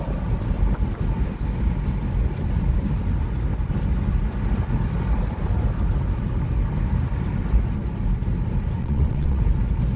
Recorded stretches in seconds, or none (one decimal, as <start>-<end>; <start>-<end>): 0.0-8.8; 9.4-10.0